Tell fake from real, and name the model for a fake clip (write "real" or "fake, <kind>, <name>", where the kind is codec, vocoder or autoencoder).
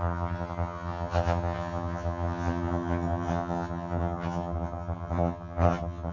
fake, vocoder, HiFi-GAN